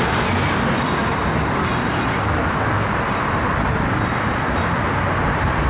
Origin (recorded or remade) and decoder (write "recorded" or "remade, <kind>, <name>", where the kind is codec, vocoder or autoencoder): recorded